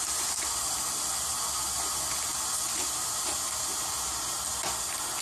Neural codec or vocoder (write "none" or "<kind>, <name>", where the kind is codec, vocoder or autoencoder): none